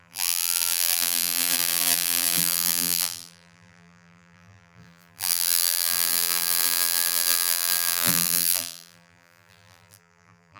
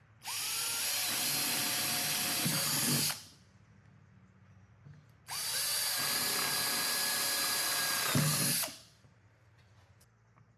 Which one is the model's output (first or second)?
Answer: first